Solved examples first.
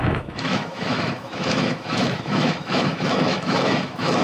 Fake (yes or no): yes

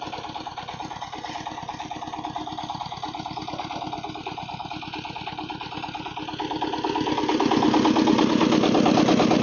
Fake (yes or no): no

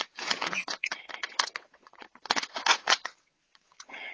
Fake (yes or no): yes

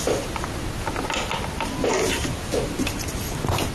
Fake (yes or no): no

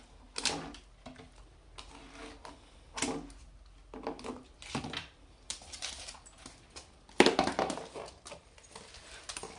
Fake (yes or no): no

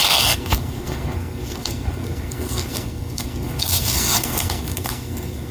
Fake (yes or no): yes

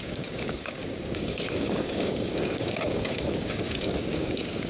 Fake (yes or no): yes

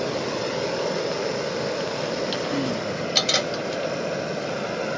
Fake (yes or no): no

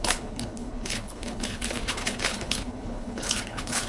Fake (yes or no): yes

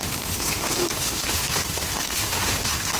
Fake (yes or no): yes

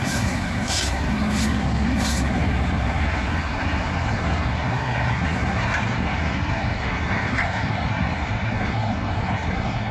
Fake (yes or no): yes